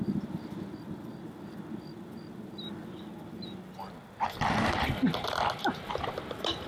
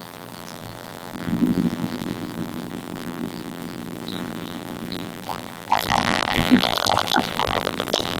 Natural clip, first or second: first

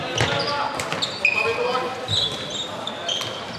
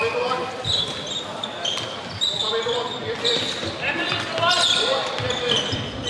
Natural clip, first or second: first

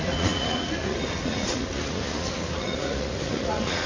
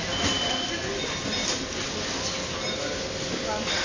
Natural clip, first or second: second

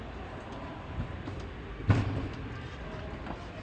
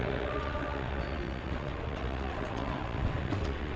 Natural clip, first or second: first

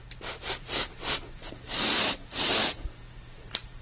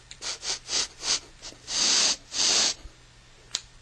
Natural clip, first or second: second